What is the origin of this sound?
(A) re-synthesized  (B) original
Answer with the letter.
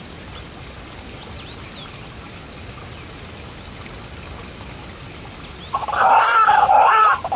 B